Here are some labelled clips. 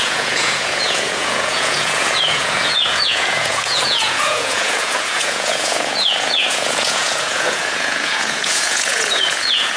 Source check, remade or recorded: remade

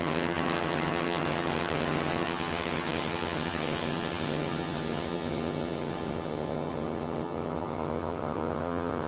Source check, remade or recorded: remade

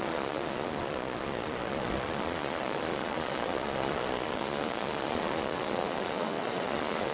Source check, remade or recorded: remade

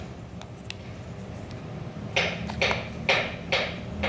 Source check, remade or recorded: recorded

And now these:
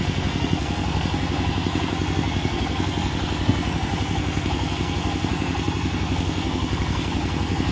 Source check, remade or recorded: remade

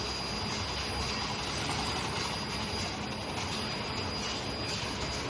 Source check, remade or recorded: recorded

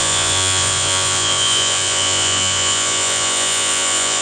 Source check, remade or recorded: remade